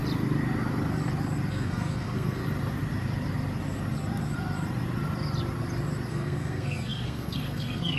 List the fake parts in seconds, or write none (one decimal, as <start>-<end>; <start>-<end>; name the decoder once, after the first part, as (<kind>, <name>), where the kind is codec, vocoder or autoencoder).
1.5-2.4 (codec, SNAC); 6.1-8.0